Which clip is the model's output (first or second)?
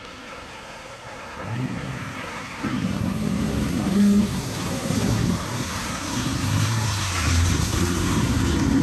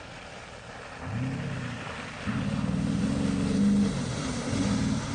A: first